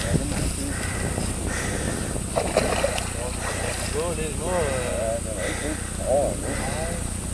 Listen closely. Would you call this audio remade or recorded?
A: recorded